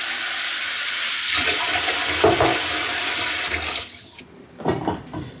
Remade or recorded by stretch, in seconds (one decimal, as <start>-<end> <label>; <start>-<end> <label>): 0.0-0.8 recorded; 0.8-1.6 remade; 1.6-2.5 recorded; 2.5-3.2 remade; 3.2-4.7 recorded; 4.7-5.4 remade